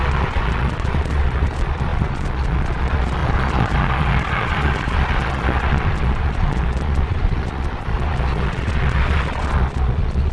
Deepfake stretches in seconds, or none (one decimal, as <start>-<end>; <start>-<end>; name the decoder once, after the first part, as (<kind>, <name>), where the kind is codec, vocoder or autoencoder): 0.0-10.3 (vocoder, Vocos)